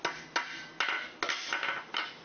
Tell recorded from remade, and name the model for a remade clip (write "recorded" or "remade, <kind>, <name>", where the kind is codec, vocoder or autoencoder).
recorded